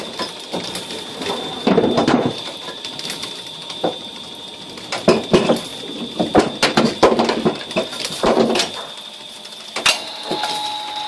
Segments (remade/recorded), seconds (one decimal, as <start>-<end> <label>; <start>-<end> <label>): 0.0-2.0 recorded; 2.0-4.5 remade; 4.5-7.9 recorded; 7.9-8.4 remade; 8.4-11.1 recorded